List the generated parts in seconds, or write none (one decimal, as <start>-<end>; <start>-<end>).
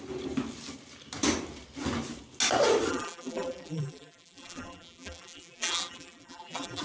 2.9-6.8